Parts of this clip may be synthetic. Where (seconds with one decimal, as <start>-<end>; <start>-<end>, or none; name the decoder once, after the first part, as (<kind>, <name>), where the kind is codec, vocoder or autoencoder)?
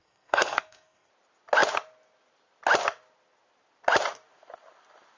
0.0-1.1 (codec, SNAC)